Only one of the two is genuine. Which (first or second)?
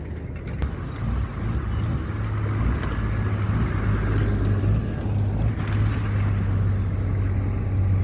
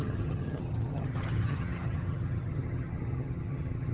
first